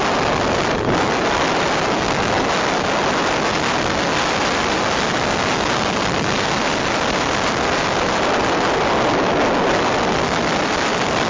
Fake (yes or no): no